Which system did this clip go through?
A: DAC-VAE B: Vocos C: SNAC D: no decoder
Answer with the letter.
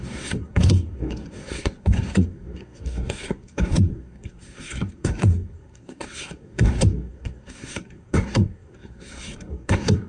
C